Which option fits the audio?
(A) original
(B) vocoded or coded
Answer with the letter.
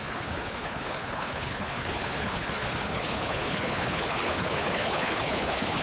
B